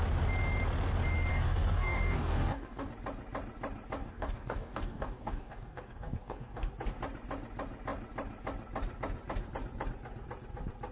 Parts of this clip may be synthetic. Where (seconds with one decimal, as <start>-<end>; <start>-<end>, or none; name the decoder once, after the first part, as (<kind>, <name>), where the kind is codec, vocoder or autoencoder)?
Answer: 1.3-2.9 (codec, DAC); 4.0-6.7